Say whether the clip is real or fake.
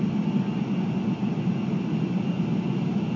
real